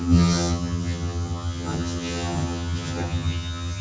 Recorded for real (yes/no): no